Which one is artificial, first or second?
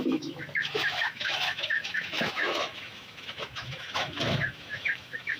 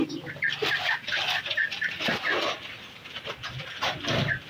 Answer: first